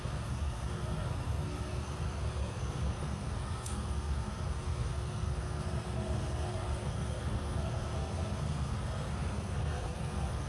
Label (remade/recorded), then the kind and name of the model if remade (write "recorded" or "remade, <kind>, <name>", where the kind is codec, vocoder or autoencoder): remade, codec, SNAC